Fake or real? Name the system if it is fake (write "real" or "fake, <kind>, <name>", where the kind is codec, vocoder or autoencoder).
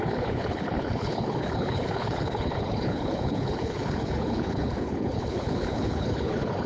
fake, codec, HILCodec